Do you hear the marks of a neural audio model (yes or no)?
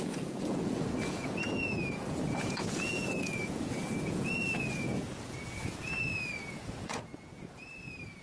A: yes